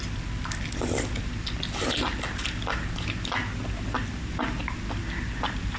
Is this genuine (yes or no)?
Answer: yes